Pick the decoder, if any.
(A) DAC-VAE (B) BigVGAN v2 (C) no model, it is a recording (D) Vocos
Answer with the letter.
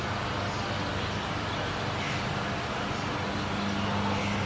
C